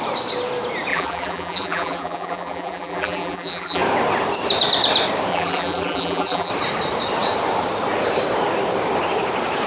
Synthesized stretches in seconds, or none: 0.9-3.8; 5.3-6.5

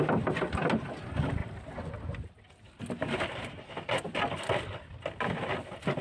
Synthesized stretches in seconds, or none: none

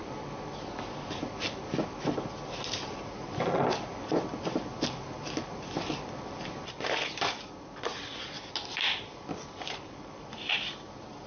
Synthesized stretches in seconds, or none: 3.9-11.3

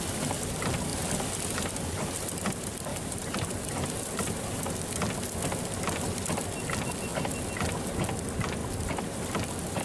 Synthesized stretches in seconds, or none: 2.9-4.6

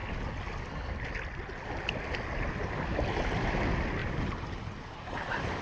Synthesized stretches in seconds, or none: 4.0-5.6

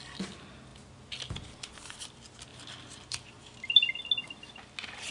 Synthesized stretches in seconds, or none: 2.5-4.0